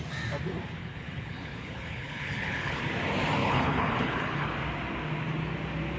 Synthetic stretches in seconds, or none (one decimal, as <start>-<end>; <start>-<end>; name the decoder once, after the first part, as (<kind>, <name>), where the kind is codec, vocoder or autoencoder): 0.8-2.8 (codec, HILCodec); 3.4-4.5